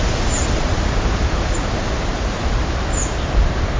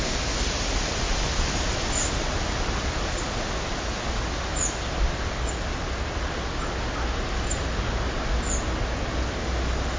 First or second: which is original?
second